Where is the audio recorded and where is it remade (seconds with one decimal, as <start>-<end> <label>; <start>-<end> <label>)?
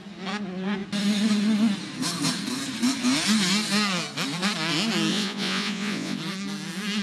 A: 0.0-5.1 recorded; 5.1-6.2 remade; 6.2-7.0 recorded